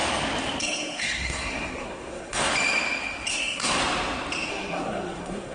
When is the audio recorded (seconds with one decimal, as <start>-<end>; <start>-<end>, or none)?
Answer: 0.0-0.6; 2.5-3.3; 3.8-4.5